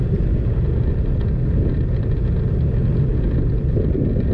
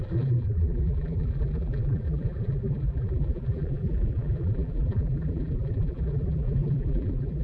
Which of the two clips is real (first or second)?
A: first